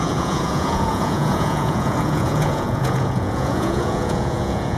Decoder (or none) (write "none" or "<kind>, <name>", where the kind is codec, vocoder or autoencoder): vocoder, Vocos